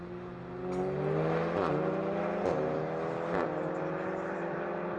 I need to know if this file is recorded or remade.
recorded